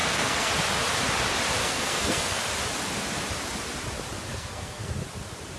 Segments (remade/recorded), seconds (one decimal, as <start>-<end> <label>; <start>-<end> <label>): 0.0-0.5 remade; 0.5-1.6 recorded; 1.6-2.4 remade; 2.4-4.3 recorded; 4.3-4.9 remade; 4.9-5.6 recorded